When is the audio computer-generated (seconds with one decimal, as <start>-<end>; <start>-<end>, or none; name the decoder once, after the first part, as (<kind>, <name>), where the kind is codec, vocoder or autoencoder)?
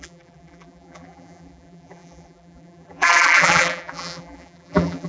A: 0.0-5.1 (vocoder, BigVGAN v2)